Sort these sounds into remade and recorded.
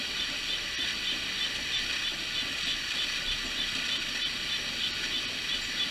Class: recorded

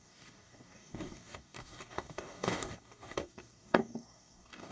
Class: remade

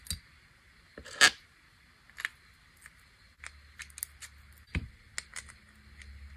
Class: recorded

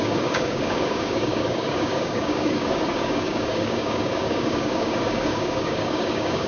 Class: remade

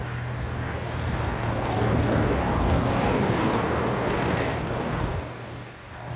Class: remade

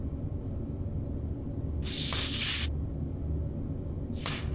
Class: recorded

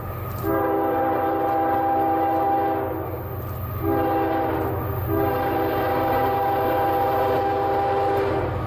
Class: recorded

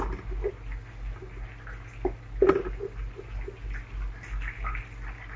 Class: recorded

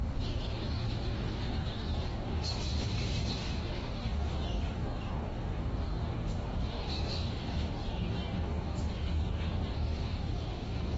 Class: remade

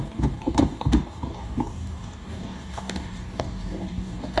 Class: remade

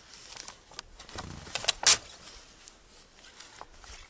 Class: recorded